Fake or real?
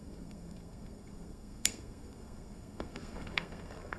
fake